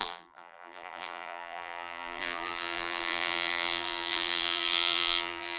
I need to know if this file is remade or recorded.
remade